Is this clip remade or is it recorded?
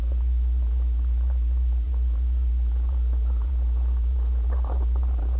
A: remade